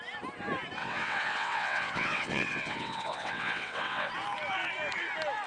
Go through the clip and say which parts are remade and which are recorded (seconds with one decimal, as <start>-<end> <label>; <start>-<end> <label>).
0.0-0.8 recorded; 0.8-4.1 remade; 4.1-5.5 recorded